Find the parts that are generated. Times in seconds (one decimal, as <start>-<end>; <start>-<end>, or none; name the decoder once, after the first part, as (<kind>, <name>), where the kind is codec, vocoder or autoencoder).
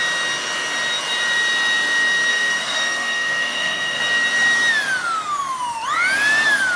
2.3-4.0 (codec, SNAC)